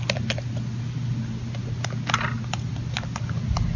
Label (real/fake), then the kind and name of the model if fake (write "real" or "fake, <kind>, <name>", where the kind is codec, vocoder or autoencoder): real